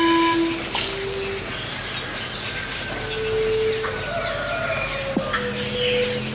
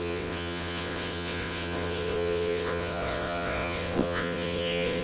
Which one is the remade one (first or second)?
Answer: second